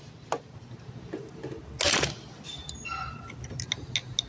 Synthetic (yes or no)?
no